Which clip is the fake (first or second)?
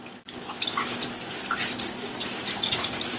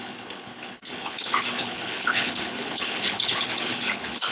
second